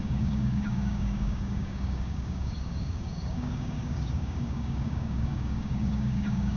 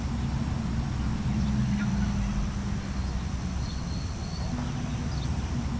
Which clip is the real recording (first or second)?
second